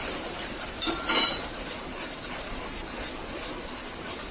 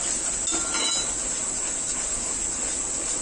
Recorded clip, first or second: second